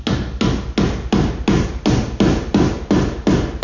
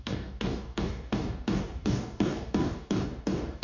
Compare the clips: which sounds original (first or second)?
first